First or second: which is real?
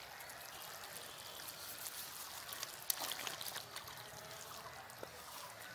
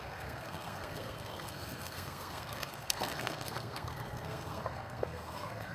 first